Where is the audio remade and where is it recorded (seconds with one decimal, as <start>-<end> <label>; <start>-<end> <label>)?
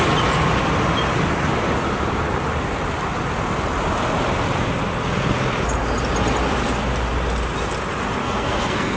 0.0-8.2 recorded; 8.2-9.0 remade